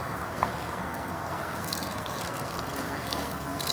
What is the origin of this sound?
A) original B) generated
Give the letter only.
B